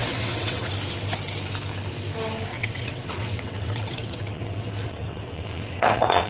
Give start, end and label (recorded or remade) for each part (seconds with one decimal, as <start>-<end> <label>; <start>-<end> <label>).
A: 0.0-0.7 remade; 0.7-2.5 recorded; 2.5-6.3 remade